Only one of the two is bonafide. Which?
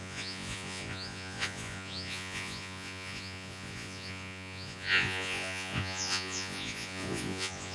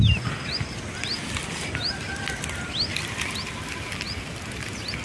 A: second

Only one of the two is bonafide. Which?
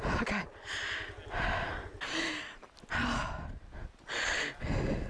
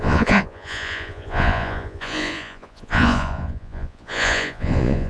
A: first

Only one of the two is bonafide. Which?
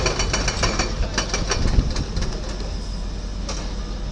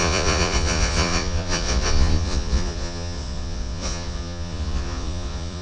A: first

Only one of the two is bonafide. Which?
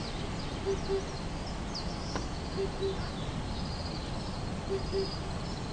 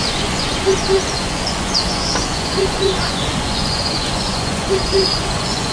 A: first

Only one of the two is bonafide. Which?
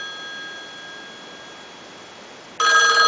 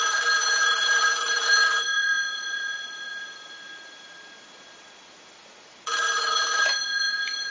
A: first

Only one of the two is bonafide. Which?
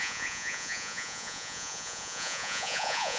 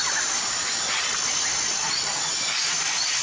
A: second